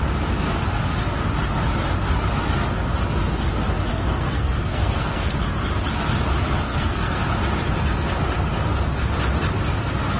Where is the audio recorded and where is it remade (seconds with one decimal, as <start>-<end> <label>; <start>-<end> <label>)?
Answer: 0.0-3.9 recorded; 3.9-5.4 remade; 5.4-6.7 recorded; 6.7-7.2 remade; 7.2-10.2 recorded